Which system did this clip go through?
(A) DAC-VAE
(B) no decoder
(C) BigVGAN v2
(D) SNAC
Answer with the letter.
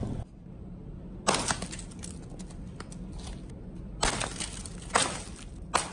B